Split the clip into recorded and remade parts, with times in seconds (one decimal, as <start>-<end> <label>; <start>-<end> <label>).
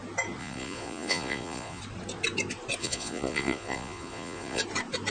0.0-0.4 recorded; 0.4-1.8 remade; 1.8-2.8 recorded; 2.8-4.6 remade; 4.6-5.1 recorded